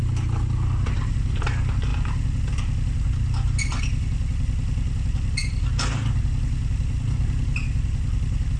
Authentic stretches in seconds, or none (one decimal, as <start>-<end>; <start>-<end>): 0.0-8.6